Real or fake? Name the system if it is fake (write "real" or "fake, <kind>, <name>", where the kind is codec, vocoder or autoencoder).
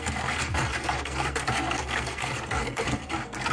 fake, codec, SNAC